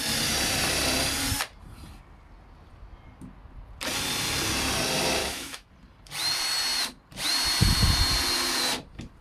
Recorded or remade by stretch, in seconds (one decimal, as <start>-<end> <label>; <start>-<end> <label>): 0.0-5.2 recorded; 5.2-5.7 remade; 5.7-9.2 recorded